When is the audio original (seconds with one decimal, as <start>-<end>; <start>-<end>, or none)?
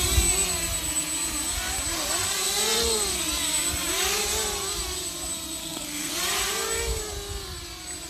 0.0-5.6; 6.1-8.1